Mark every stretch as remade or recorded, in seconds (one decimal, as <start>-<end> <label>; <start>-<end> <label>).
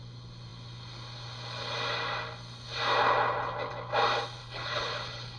0.0-4.4 recorded; 4.4-5.4 remade